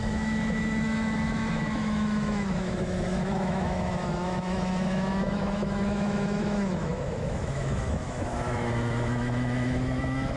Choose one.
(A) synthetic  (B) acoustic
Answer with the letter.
A